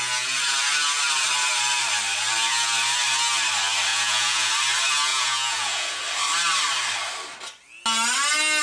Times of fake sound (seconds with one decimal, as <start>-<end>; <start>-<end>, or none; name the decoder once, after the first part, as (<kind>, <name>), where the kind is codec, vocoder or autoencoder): 3.9-4.5 (vocoder, Vocos); 5.1-6.0